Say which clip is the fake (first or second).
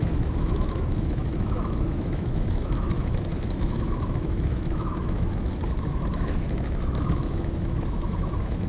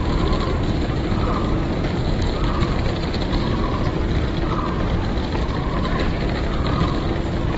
first